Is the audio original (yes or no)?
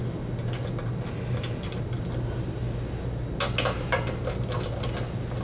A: yes